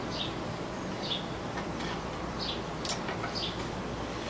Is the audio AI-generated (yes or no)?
no